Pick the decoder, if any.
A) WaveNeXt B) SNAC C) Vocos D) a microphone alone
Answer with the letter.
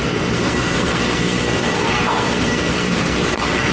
B